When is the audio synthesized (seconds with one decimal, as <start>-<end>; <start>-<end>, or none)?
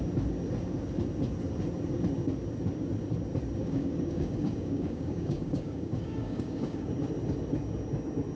3.6-6.9